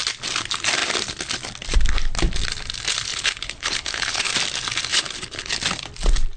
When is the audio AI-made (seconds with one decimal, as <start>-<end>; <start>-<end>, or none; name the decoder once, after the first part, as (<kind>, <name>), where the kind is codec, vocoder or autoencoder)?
3.1-4.3 (codec, HILCodec); 4.9-5.6